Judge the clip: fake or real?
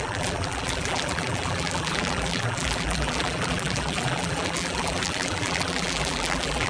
fake